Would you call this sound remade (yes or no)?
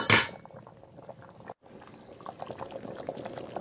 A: no